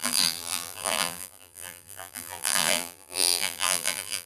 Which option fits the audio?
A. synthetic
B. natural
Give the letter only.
A